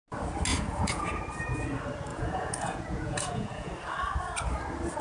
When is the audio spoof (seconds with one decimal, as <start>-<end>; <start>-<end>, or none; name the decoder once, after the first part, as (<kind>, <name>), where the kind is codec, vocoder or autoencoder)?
0.5-1.2 (vocoder, Vocos); 2.1-3.7